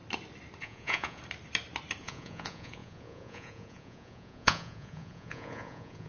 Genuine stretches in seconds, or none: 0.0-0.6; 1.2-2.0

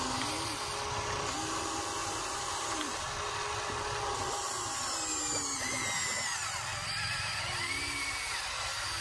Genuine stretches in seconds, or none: 0.0-9.0

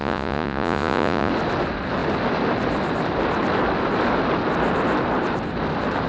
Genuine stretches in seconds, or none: 1.3-6.1

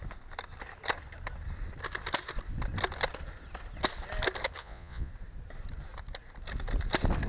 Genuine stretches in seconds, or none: 0.0-4.6; 5.1-7.3

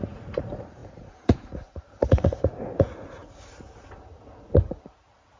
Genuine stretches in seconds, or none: none